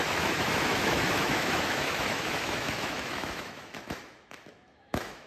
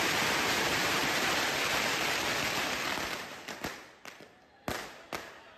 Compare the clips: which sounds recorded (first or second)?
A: second